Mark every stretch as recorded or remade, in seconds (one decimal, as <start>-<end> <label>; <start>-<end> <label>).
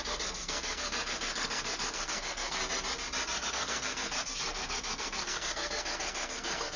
0.0-2.6 remade; 2.6-3.5 recorded; 3.5-6.8 remade